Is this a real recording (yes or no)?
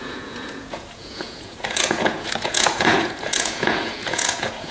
no